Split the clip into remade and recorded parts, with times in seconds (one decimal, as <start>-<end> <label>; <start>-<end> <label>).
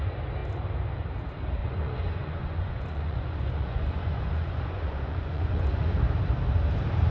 0.0-1.6 recorded; 1.6-5.9 remade; 5.9-7.1 recorded